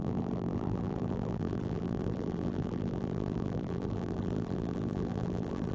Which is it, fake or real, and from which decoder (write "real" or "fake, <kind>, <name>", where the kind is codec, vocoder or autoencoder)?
fake, vocoder, BigVGAN v2